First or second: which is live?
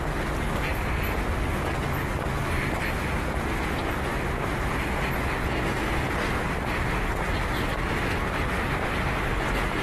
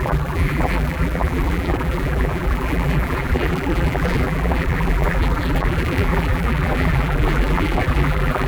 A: first